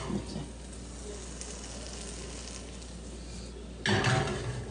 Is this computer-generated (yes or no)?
no